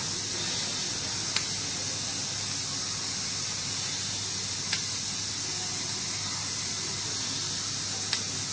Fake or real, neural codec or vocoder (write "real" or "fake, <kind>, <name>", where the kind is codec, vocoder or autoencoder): real